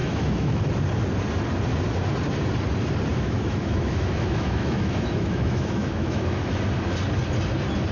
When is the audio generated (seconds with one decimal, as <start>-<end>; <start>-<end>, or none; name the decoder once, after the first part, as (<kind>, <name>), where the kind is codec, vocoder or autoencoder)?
0.0-0.6 (autoencoder, DAC-VAE); 3.1-6.5